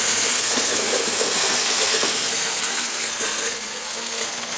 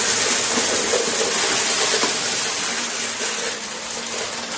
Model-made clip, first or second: first